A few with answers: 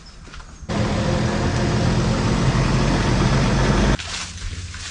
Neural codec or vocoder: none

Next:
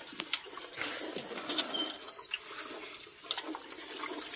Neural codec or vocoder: none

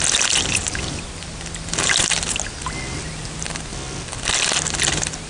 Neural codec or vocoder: none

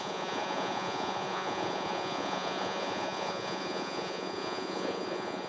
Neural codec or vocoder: vocoder, Vocos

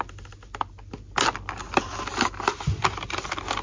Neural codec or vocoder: none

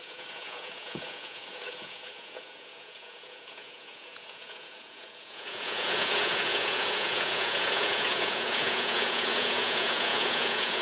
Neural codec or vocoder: vocoder, Vocos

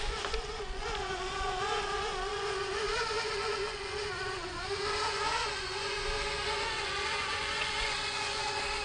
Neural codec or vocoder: vocoder, Vocos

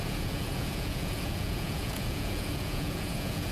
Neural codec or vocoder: vocoder, Vocos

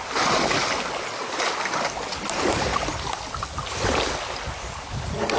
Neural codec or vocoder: none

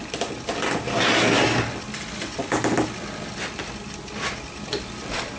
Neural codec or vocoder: none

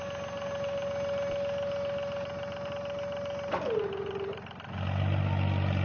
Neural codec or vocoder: none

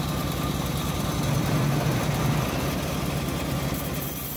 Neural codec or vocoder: none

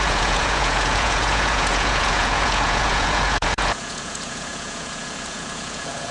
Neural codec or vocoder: vocoder, Vocos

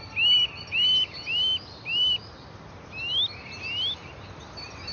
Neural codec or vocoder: none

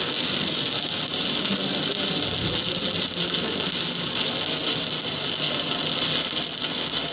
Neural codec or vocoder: none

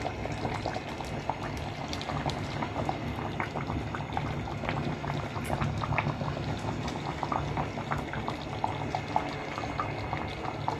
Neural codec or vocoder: none